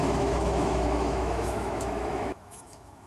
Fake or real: fake